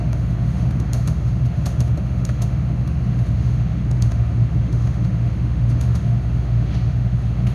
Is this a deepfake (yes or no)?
yes